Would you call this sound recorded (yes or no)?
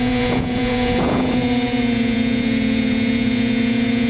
no